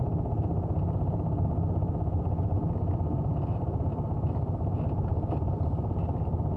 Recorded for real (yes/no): yes